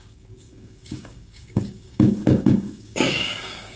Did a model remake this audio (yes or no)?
yes